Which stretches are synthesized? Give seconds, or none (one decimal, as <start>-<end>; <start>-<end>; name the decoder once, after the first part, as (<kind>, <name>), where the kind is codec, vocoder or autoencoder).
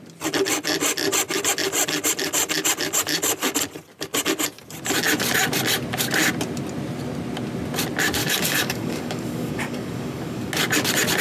8.2-10.5 (codec, DAC)